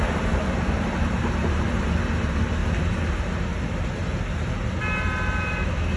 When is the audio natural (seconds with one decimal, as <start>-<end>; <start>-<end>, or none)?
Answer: 2.6-3.1; 3.5-4.4